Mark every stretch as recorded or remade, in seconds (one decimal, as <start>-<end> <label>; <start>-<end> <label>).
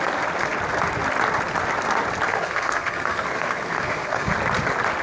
0.0-2.3 recorded; 2.3-4.3 remade; 4.3-5.0 recorded